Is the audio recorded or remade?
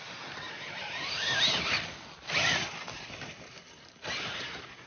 recorded